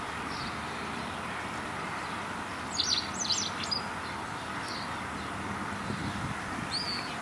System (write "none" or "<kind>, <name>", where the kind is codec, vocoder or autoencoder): none